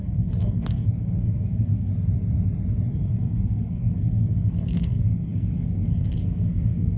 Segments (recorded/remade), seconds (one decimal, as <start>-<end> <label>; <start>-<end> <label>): 0.0-1.9 remade; 1.9-2.9 recorded; 2.9-7.0 remade